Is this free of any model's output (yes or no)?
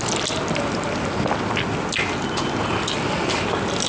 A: yes